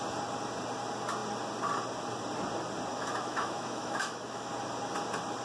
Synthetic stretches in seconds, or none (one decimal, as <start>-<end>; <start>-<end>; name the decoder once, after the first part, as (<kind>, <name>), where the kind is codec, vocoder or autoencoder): 2.9-4.5 (autoencoder, DAC-VAE)